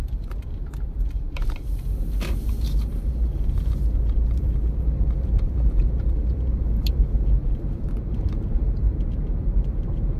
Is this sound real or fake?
fake